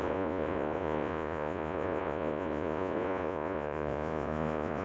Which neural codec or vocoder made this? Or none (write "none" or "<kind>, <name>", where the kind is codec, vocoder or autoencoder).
vocoder, Vocos